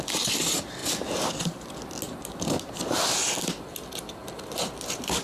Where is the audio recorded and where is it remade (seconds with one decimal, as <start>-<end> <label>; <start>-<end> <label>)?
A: 0.0-4.2 recorded; 4.2-5.2 remade